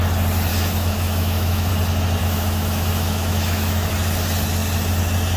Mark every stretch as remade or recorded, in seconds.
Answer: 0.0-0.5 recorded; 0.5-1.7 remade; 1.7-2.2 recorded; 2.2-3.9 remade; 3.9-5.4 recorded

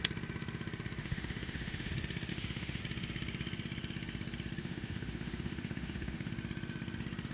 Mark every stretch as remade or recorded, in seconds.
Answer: 0.0-1.0 recorded; 1.0-1.9 remade; 1.9-2.3 recorded; 2.3-2.8 remade; 2.8-4.6 recorded; 4.6-6.3 remade; 6.3-7.3 recorded

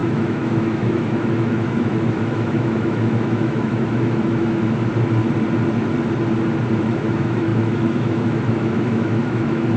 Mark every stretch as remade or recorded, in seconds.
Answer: 0.0-4.9 remade; 4.9-6.8 recorded; 6.8-9.8 remade

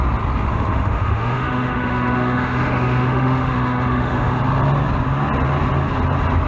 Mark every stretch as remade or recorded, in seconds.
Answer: 0.0-0.5 recorded; 0.5-4.4 remade; 4.4-6.5 recorded

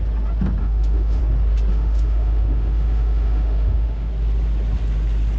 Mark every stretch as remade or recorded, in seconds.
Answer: 0.0-0.6 recorded; 0.6-1.2 remade; 1.2-1.7 recorded; 1.7-4.1 remade; 4.1-5.4 recorded

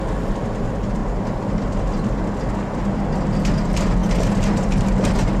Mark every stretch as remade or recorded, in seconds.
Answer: 0.0-5.4 recorded

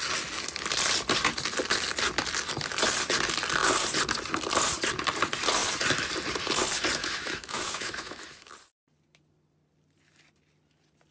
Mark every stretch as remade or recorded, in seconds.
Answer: 0.0-7.0 recorded; 7.0-8.5 remade; 8.5-11.1 recorded